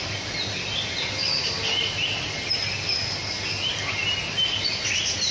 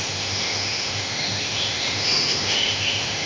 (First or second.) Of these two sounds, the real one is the first